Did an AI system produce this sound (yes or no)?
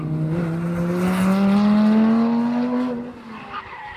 no